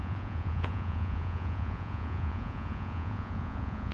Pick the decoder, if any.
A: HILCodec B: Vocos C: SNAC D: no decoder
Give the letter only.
B